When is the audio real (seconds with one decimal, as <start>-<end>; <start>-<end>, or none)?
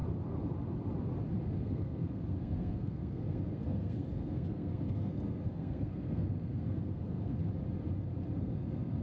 0.0-1.4; 7.4-8.4